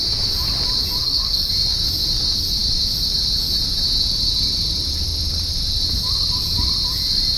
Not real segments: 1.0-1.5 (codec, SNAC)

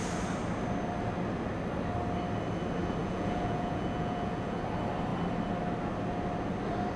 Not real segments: 3.0-4.6 (vocoder, Vocos)